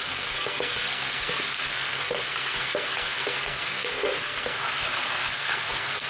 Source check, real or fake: fake